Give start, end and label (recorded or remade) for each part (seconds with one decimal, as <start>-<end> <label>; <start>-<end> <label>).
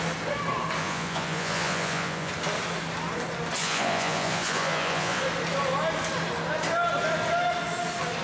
0.0-0.8 recorded; 0.8-2.3 remade; 2.3-3.6 recorded; 3.6-5.2 remade; 5.2-8.2 recorded